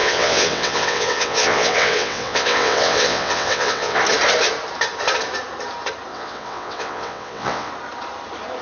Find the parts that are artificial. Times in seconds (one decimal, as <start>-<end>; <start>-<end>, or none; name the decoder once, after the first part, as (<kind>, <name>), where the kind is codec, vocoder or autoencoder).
0.0-4.0 (vocoder, WaveNeXt); 6.1-7.7